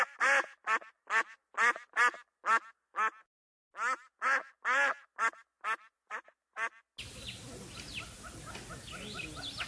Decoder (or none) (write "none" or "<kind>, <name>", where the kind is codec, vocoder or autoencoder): none